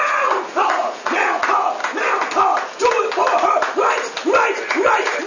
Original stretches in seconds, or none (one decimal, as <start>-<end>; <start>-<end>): 1.8-5.3